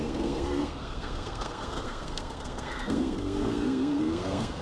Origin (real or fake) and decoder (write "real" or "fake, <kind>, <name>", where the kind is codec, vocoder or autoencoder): fake, codec, SNAC